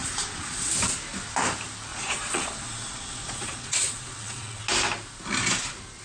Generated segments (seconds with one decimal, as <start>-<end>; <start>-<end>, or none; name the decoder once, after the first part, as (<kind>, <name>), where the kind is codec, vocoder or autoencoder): 0.0-0.7 (vocoder, Vocos); 1.9-4.6

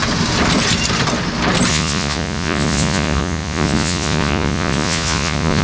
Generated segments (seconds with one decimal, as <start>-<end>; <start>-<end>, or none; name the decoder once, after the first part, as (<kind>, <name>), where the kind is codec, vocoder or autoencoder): 1.7-5.6 (vocoder, Vocos)

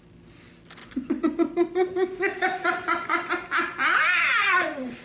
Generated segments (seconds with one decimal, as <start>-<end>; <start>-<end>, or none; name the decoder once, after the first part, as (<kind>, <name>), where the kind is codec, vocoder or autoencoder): 0.8-3.3 (vocoder, Vocos); 4.4-5.0

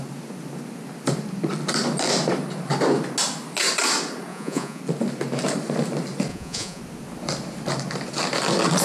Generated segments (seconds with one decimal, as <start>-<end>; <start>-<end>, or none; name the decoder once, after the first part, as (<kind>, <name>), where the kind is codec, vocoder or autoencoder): 4.3-4.8 (vocoder, Vocos); 6.3-6.8

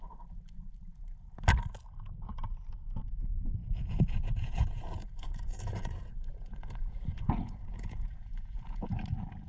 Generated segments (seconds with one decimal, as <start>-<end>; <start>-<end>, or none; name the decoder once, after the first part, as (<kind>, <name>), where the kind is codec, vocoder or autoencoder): 3.6-8.9 (vocoder, Vocos)